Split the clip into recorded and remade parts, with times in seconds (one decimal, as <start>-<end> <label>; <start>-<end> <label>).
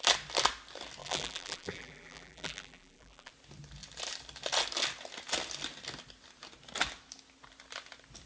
0.0-1.0 recorded; 1.0-3.3 remade; 3.3-8.3 recorded